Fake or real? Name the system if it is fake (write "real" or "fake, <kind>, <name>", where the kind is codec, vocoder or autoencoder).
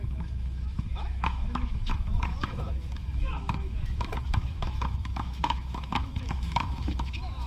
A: fake, autoencoder, DAC-VAE